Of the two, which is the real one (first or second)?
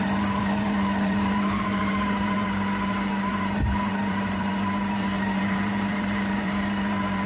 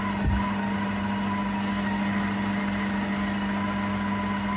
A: second